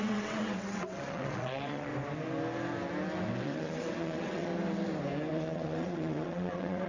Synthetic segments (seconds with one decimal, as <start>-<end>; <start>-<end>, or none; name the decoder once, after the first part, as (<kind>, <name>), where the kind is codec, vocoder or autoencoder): 0.0-1.9 (vocoder, WaveNeXt); 3.4-4.5; 5.3-6.9